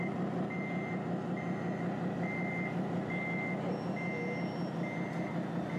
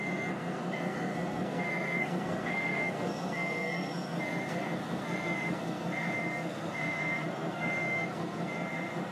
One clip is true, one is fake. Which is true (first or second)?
first